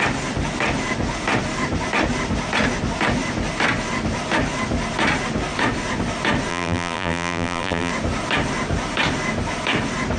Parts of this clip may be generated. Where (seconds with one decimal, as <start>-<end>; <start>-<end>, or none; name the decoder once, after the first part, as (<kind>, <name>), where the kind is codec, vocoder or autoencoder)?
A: 6.5-7.9 (vocoder, BigVGAN v2)

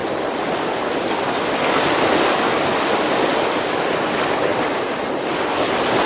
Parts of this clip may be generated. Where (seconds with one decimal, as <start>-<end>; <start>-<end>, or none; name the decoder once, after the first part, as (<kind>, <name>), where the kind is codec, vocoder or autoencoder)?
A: 4.5-5.2 (vocoder, BigVGAN v2)

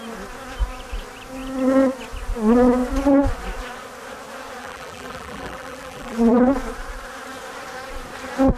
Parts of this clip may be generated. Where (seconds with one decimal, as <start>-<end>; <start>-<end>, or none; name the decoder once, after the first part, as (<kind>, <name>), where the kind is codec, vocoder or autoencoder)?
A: 4.6-6.4 (vocoder, BigVGAN v2)

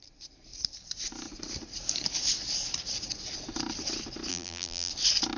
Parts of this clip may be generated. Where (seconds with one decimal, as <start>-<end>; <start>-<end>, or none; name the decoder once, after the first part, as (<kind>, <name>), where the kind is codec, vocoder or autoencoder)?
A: 4.3-4.9 (vocoder, BigVGAN v2)

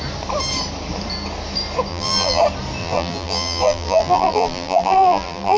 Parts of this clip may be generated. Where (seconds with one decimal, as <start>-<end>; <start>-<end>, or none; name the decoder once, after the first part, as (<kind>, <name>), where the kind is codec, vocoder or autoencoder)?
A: 1.9-2.4 (vocoder, BigVGAN v2); 2.8-5.6

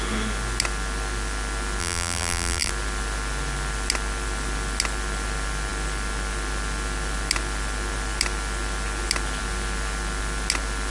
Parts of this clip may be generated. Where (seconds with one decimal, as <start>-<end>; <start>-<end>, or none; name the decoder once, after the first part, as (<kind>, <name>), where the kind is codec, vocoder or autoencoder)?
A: 1.8-2.7 (vocoder, BigVGAN v2)

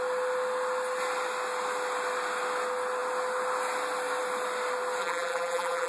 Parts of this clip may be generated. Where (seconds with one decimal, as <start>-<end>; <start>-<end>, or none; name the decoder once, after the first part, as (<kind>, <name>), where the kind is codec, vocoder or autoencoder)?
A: 5.0-5.9 (vocoder, BigVGAN v2)